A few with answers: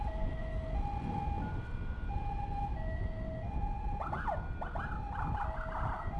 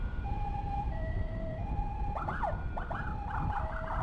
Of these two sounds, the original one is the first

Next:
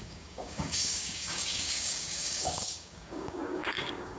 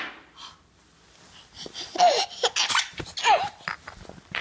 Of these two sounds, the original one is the second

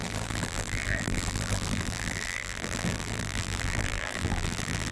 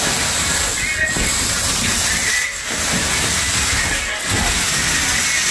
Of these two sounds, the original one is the second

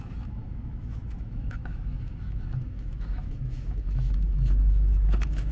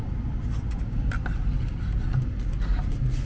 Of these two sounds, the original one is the second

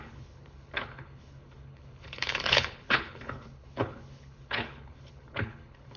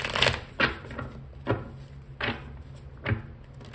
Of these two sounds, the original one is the second